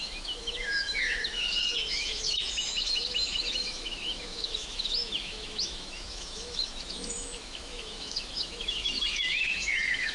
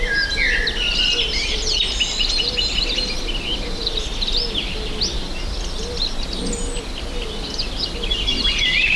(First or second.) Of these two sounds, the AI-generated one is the first